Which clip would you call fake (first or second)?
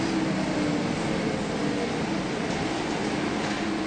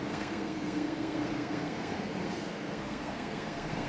second